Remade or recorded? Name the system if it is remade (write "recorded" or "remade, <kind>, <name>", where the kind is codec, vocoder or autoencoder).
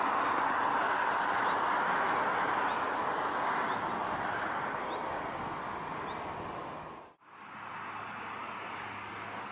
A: recorded